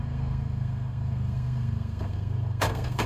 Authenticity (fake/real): fake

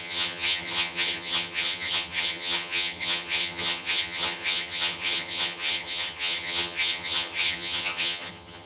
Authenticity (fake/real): fake